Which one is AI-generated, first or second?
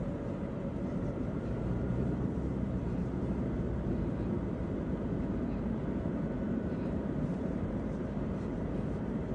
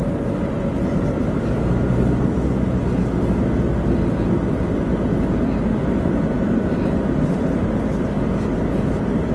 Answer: first